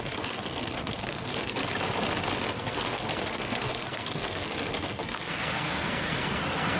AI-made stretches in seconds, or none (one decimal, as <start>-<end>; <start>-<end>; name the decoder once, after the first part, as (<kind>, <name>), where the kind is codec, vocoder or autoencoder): 0.0-1.6 (codec, SNAC); 2.5-6.8